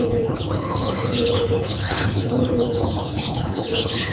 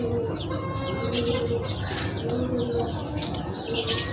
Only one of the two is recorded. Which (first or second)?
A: second